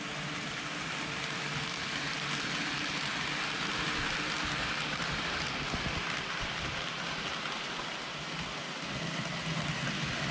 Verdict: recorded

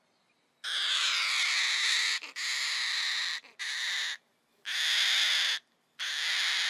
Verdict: recorded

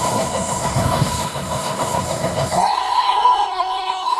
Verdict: remade